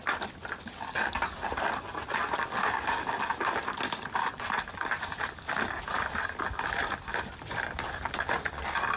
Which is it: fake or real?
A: real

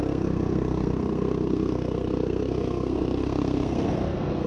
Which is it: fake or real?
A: fake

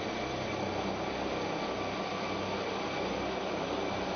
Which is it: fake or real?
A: real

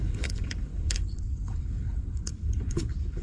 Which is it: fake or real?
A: fake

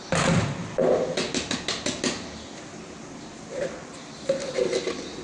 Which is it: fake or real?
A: real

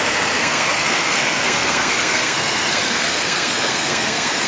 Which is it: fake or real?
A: fake